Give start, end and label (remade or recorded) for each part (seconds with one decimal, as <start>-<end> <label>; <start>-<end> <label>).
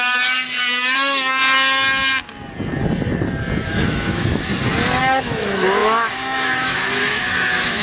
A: 0.0-1.4 remade; 1.4-3.6 recorded; 3.6-4.5 remade; 4.5-5.0 recorded; 5.0-7.8 remade